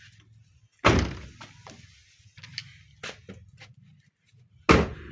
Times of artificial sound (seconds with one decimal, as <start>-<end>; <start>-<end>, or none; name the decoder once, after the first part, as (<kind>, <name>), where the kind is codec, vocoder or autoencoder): none